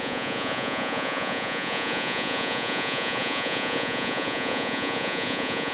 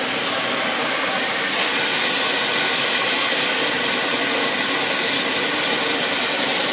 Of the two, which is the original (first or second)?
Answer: second